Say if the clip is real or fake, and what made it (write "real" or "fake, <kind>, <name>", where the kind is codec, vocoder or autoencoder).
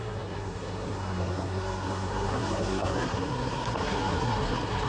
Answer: fake, codec, SNAC